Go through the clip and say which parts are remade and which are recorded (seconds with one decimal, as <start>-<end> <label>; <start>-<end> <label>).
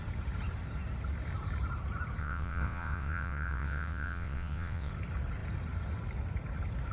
0.0-2.2 recorded; 2.2-4.9 remade; 4.9-6.9 recorded